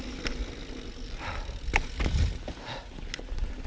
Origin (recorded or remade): recorded